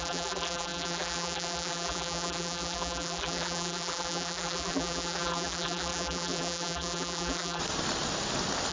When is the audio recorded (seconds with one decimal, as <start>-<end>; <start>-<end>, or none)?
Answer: 7.6-8.7